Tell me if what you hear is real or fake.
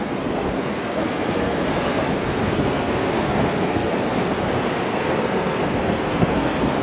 fake